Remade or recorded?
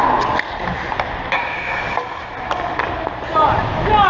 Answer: recorded